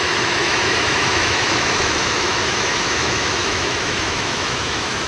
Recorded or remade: remade